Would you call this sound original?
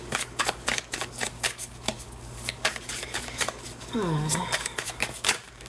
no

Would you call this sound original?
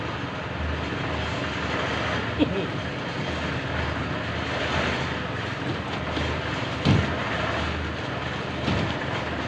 yes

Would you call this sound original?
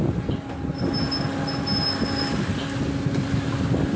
yes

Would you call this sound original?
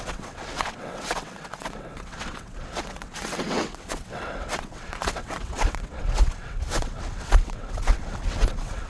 no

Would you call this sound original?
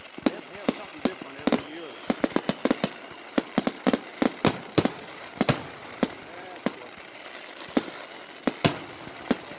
yes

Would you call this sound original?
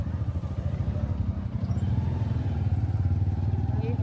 yes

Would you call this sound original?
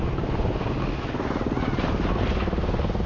yes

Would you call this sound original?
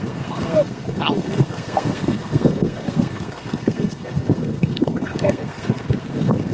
no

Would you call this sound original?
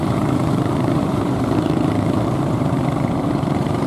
no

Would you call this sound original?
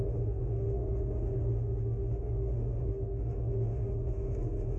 no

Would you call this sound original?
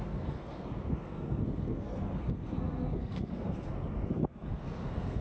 no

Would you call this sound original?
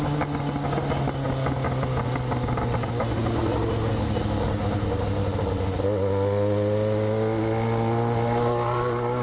yes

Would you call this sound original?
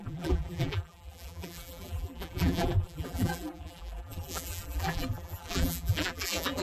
no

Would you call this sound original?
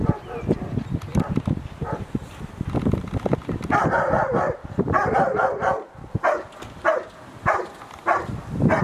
yes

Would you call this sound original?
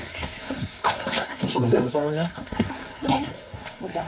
no